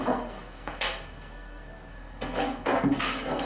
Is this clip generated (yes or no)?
yes